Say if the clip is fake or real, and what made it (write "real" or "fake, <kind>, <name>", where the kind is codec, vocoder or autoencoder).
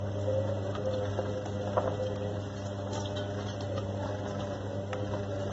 real